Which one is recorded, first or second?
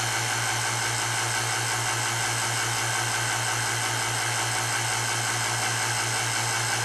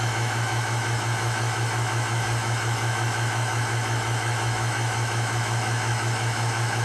first